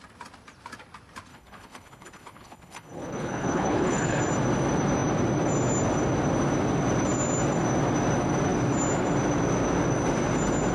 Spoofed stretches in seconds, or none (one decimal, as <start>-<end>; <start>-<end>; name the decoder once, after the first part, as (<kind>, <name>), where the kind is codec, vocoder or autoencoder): 1.3-4.2 (codec, HILCodec)